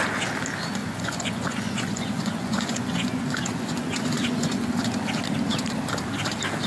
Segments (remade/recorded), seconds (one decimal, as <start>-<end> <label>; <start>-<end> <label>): 0.0-0.8 recorded; 0.8-4.7 remade; 4.7-6.7 recorded